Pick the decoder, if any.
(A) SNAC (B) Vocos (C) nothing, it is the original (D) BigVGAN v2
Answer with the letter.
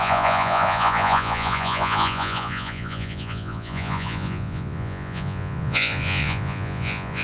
B